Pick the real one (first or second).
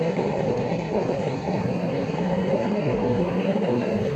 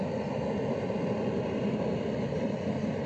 second